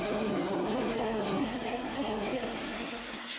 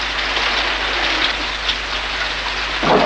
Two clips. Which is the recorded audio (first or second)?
second